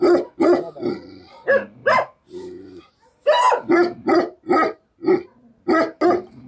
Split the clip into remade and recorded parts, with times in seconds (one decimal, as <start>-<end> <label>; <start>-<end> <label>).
0.0-1.8 recorded; 1.8-2.9 remade; 2.9-6.5 recorded